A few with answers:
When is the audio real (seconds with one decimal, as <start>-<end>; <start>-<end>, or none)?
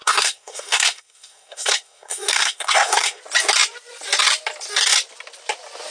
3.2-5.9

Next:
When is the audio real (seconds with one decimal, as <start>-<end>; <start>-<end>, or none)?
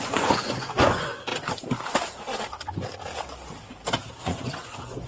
1.3-4.2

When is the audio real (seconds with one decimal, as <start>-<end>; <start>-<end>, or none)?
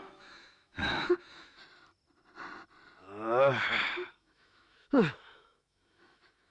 1.6-4.1